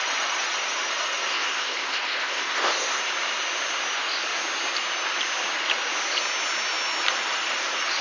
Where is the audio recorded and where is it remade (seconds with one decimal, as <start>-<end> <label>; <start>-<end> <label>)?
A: 0.0-1.3 recorded; 1.3-3.0 remade; 3.0-8.0 recorded

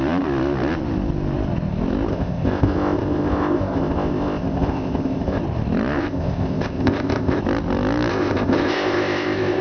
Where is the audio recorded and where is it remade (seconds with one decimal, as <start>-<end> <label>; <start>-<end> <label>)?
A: 0.0-2.1 recorded; 2.1-5.4 remade; 5.4-6.0 recorded; 6.0-7.4 remade; 7.4-8.1 recorded; 8.1-9.6 remade

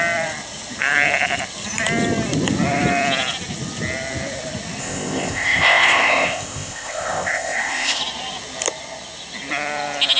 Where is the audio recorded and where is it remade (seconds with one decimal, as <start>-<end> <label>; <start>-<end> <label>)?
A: 0.0-4.8 recorded; 4.8-8.0 remade; 8.0-10.2 recorded

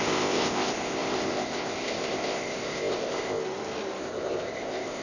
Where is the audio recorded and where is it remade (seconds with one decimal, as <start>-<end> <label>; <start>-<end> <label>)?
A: 0.0-3.4 remade; 3.4-4.0 recorded; 4.0-5.0 remade

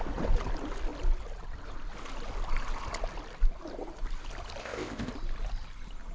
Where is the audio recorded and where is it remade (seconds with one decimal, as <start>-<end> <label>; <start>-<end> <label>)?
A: 0.0-4.6 recorded; 4.6-5.1 remade; 5.1-6.1 recorded

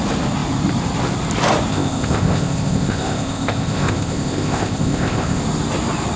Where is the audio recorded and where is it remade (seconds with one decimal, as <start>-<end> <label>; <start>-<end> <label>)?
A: 0.0-1.7 recorded; 1.7-5.4 remade; 5.4-6.2 recorded

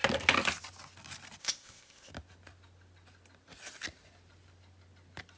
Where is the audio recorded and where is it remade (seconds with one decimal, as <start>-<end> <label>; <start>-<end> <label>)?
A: 0.0-1.4 recorded; 1.4-2.1 remade; 2.1-5.4 recorded

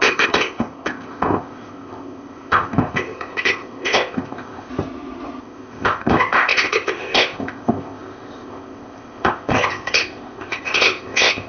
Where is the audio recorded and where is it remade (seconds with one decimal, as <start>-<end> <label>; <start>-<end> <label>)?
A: 0.0-4.7 remade; 4.7-5.4 recorded; 5.4-11.5 remade